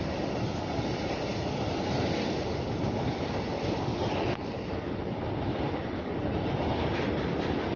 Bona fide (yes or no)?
yes